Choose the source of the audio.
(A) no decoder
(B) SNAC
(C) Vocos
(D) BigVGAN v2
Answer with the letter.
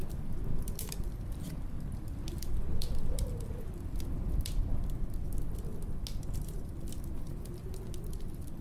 A